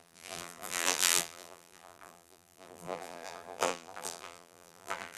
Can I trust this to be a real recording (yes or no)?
no